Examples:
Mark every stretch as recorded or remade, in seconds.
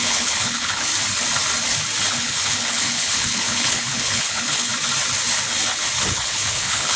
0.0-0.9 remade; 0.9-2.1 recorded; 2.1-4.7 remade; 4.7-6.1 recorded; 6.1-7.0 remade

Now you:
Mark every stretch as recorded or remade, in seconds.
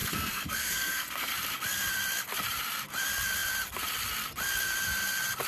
0.0-1.3 remade; 1.3-5.5 recorded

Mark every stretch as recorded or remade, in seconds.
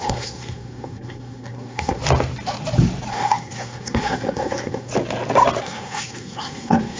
0.0-2.0 remade; 2.0-3.1 recorded; 3.1-4.9 remade; 4.9-5.6 recorded; 5.6-7.0 remade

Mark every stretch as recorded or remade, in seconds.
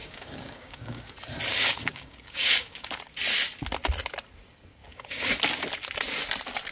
0.0-1.1 remade; 1.1-1.5 recorded; 1.5-2.9 remade; 2.9-4.8 recorded; 4.8-5.3 remade; 5.3-6.7 recorded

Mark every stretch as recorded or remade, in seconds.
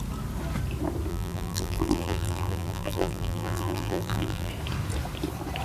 0.0-1.1 recorded; 1.1-4.5 remade; 4.5-5.6 recorded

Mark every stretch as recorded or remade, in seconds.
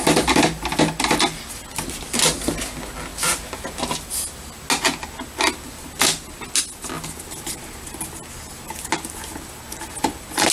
0.0-10.5 recorded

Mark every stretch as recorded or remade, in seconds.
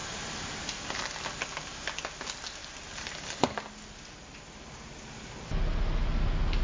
0.0-6.6 recorded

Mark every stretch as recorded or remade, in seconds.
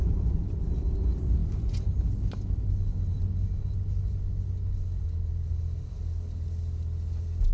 0.0-7.5 recorded